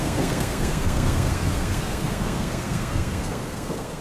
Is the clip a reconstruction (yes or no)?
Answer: yes